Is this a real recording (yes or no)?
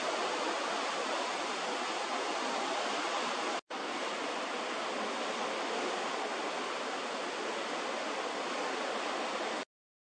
yes